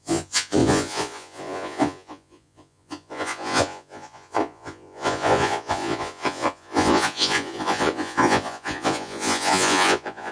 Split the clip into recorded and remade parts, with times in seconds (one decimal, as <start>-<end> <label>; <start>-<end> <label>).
0.0-10.3 remade